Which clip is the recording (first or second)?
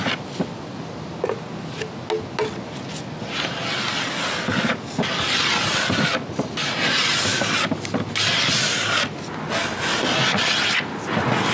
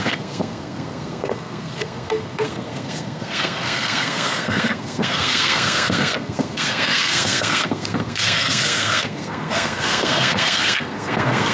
first